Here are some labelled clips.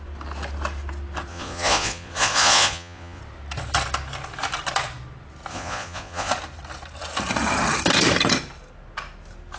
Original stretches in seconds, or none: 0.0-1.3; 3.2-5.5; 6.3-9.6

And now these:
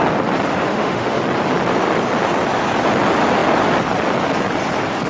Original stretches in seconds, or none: 0.0-0.5; 1.2-5.1